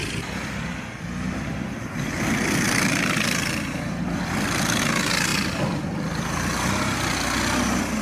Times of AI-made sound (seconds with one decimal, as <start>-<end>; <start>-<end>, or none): 0.0-4.8; 5.3-6.7